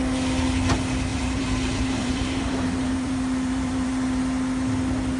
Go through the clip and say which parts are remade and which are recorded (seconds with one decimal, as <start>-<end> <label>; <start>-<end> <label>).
0.0-1.1 recorded; 1.1-4.2 remade; 4.2-5.2 recorded